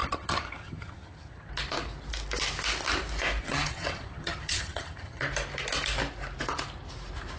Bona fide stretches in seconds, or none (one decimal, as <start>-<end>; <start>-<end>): 1.5-3.4; 5.2-7.4